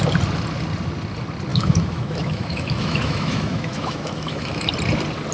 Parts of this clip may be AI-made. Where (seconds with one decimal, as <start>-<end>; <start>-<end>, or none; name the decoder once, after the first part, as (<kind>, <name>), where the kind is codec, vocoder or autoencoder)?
1.5-4.7 (autoencoder, DAC-VAE)